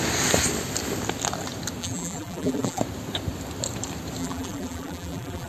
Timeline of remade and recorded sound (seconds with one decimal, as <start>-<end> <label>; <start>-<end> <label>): 0.0-1.8 recorded; 1.8-2.8 remade; 2.8-4.2 recorded; 4.2-5.5 remade